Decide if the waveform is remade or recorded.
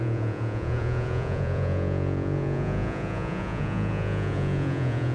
remade